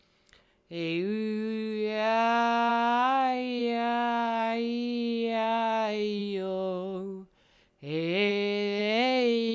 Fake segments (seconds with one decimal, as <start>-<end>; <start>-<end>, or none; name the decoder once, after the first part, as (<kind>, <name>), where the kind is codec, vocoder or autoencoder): 8.8-9.5 (codec, DAC)